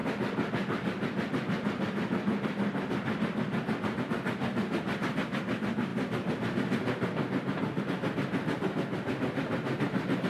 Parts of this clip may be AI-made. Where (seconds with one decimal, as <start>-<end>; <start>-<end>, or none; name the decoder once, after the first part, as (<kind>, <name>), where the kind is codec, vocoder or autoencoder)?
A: none

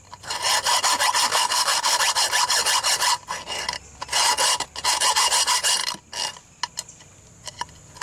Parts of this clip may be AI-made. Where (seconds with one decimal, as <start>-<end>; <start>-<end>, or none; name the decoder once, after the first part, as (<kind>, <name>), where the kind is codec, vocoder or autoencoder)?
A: 1.3-2.0 (codec, SNAC)

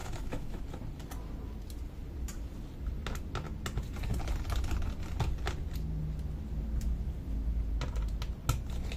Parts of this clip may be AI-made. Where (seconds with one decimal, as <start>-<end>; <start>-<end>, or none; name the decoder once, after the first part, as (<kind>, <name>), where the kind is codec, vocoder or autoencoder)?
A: 0.0-0.6 (autoencoder, DAC-VAE)

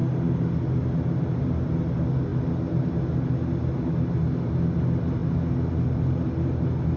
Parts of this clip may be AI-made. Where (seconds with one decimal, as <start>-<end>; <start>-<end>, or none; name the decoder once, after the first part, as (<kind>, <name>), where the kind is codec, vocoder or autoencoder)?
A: none

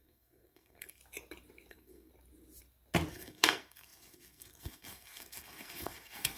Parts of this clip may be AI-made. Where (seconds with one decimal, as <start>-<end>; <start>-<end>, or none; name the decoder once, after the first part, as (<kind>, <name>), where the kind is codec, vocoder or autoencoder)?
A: 0.0-1.0 (codec, SNAC); 1.7-2.1; 3.1-6.4

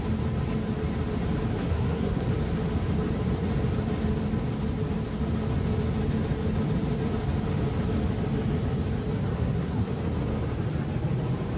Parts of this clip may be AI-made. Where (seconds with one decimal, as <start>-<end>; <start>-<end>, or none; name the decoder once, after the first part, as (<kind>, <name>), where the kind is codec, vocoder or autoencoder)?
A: 1.5-2.3 (codec, SNAC); 9.3-9.9

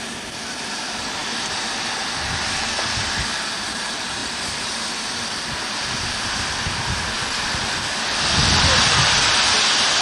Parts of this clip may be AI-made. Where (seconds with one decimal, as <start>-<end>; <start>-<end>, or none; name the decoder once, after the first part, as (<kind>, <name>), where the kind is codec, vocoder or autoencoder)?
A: 0.0-10.0 (vocoder, BigVGAN v2)

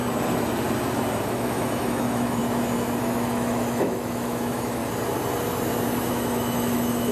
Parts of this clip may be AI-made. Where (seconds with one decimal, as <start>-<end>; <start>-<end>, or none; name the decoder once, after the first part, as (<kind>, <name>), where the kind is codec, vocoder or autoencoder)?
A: 1.2-2.4 (autoencoder, DAC-VAE); 3.0-4.8; 6.1-7.1